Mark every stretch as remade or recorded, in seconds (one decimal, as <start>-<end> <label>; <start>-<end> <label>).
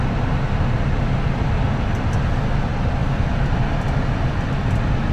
0.0-5.1 recorded